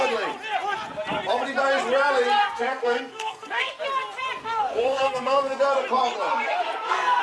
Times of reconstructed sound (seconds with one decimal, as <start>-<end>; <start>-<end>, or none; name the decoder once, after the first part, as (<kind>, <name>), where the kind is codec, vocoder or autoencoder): 2.4-3.8 (codec, SNAC); 4.4-5.6; 6.3-7.2